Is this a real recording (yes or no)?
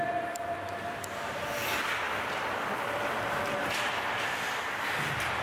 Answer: yes